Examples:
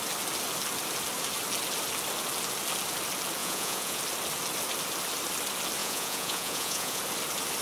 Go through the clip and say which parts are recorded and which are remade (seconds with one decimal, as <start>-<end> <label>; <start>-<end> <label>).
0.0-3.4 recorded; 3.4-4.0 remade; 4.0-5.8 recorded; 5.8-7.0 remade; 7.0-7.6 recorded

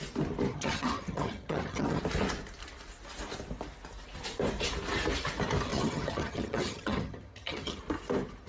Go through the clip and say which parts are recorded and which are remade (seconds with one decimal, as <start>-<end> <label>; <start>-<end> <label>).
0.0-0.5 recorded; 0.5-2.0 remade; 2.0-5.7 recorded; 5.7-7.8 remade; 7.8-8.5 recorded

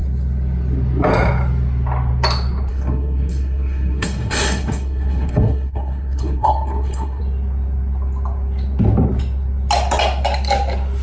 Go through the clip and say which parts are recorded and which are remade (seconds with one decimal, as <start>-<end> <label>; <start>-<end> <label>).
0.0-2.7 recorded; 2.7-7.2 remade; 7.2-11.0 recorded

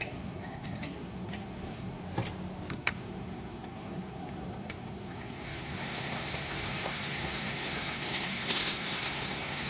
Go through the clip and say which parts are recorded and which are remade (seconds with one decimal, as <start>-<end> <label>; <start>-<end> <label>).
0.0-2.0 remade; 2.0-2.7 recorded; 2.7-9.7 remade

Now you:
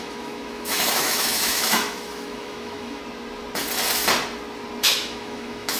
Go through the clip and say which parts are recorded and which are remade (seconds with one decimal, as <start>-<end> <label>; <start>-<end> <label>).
0.0-3.0 remade; 3.0-4.8 recorded; 4.8-5.8 remade